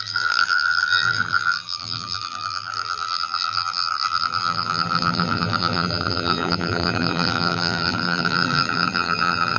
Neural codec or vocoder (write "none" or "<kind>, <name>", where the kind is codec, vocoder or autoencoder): vocoder, BigVGAN v2